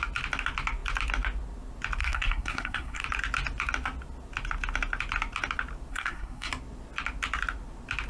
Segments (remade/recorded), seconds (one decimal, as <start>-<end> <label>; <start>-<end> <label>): 0.0-2.0 recorded; 2.0-3.0 remade; 3.0-5.9 recorded; 5.9-6.5 remade; 6.5-8.1 recorded